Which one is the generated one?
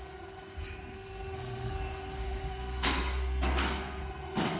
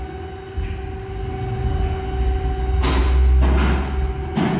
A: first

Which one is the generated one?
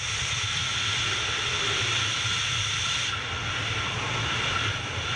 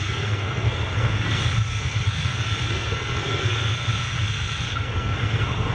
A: second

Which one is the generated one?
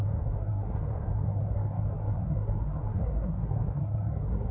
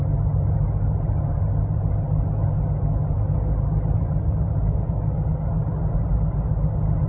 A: first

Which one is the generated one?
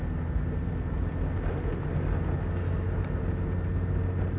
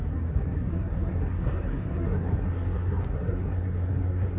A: second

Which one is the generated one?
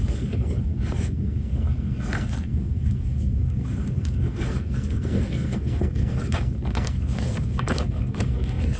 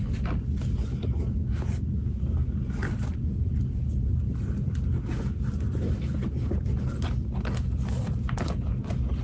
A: first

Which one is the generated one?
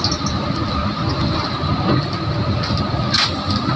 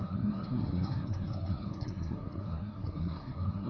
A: second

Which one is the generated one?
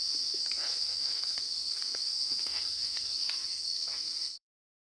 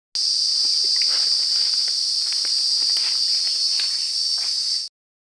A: first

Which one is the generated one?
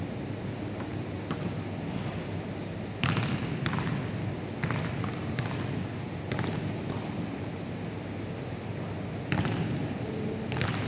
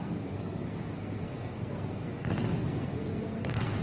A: second